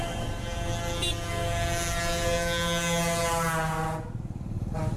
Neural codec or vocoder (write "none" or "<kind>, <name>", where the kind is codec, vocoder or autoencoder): none